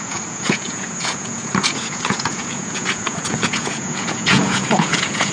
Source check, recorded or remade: remade